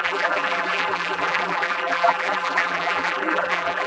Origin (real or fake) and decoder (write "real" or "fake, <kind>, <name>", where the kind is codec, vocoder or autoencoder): fake, vocoder, BigVGAN v2